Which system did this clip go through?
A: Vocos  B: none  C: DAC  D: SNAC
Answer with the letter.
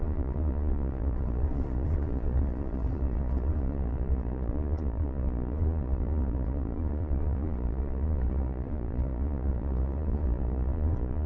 A